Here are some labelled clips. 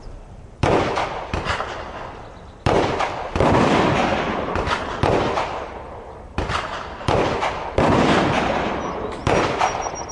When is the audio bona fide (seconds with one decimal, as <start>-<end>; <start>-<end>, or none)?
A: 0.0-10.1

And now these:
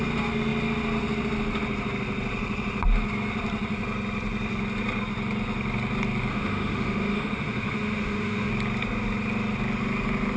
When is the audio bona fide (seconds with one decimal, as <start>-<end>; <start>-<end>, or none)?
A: 0.0-6.3; 8.5-10.4

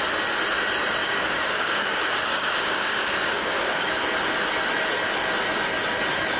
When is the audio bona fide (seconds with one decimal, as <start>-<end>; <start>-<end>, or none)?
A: 0.0-1.0; 3.9-6.4